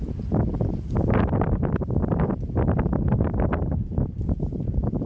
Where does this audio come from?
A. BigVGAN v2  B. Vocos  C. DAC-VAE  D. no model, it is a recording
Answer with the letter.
D